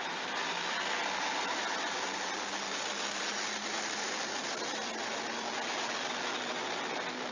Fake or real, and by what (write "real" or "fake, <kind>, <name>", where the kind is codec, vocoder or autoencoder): real